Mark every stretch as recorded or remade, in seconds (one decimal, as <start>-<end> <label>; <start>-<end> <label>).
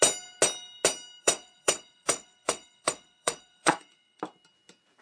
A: 0.0-1.2 recorded; 1.2-4.2 remade; 4.2-5.0 recorded